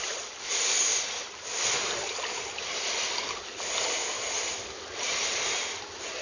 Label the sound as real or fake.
real